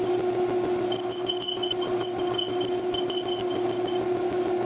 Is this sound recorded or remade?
recorded